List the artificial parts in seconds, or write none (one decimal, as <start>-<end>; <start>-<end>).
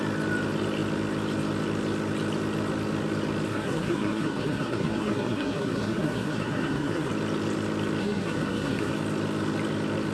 3.5-7.1; 8.0-8.9